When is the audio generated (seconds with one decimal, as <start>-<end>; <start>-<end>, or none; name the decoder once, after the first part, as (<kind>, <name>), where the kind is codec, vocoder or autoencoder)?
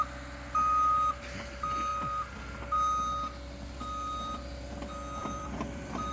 1.9-2.4 (vocoder, BigVGAN v2); 5.2-6.1